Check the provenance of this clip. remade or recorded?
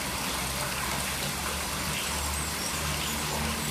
recorded